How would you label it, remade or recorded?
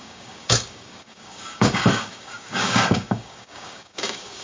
remade